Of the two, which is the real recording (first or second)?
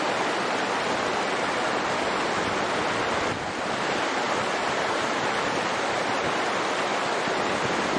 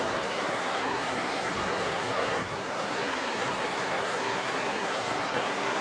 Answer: first